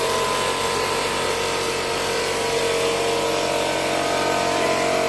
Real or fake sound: real